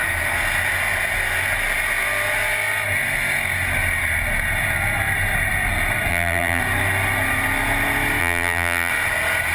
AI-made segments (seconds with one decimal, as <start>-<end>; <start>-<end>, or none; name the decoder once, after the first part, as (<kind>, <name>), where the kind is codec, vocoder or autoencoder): 6.1-6.6 (vocoder, BigVGAN v2); 8.2-8.9